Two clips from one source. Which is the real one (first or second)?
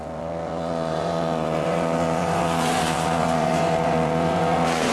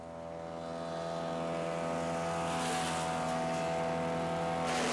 second